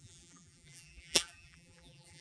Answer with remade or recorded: remade